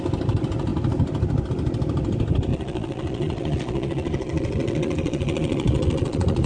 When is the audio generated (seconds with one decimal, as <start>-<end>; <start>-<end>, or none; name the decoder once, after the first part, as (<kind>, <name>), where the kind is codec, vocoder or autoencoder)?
2.5-6.5 (vocoder, Vocos)